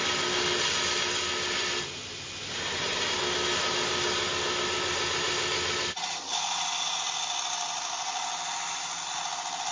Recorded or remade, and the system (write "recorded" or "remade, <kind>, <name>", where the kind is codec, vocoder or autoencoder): recorded